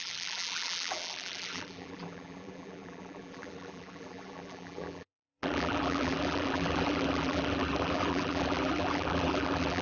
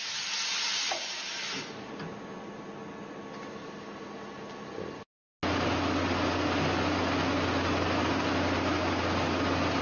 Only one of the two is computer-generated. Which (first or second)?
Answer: first